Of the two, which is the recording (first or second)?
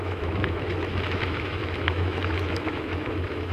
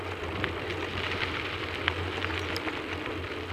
second